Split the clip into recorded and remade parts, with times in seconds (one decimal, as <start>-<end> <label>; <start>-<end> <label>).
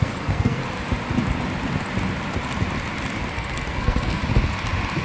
0.0-0.6 remade; 0.6-3.3 recorded; 3.3-4.2 remade; 4.2-5.0 recorded